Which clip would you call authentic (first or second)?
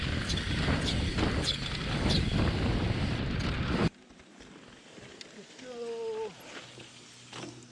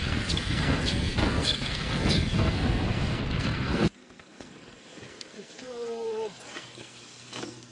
first